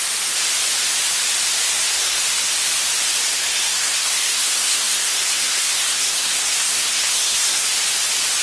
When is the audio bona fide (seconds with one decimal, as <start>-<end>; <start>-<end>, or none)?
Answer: 0.0-1.6; 2.2-3.3; 7.7-8.4